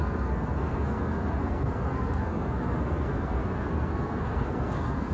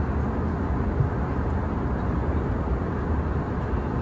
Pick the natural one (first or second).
second